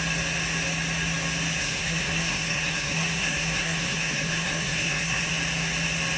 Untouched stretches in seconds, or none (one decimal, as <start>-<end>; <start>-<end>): 0.0-1.6; 5.3-6.2

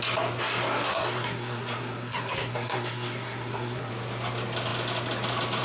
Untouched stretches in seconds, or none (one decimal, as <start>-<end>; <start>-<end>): 0.0-0.9; 3.9-5.6

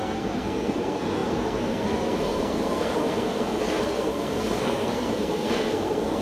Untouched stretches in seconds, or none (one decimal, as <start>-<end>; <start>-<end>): none